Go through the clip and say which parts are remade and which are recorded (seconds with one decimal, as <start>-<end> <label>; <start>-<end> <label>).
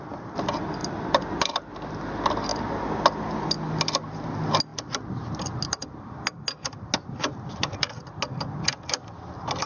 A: 0.0-0.8 recorded; 0.8-1.7 remade; 1.7-4.7 recorded; 4.7-5.4 remade; 5.4-9.7 recorded